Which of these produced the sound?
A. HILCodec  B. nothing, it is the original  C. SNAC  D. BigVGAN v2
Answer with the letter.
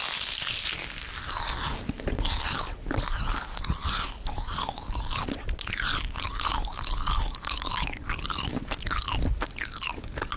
B